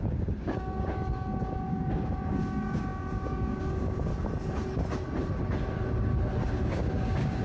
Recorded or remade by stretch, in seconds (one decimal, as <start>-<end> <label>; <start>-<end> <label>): 0.0-4.1 remade; 4.1-6.7 recorded; 6.7-7.4 remade